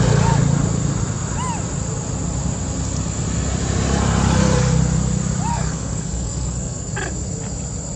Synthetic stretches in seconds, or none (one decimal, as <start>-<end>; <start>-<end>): 5.5-6.9